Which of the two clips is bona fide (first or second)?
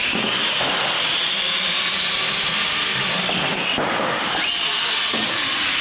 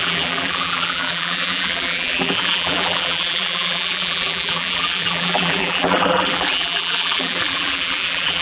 first